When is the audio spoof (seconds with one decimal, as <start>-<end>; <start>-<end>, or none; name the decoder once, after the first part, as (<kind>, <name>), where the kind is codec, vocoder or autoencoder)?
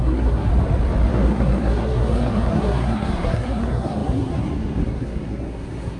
0.0-0.5 (codec, SNAC); 1.1-6.0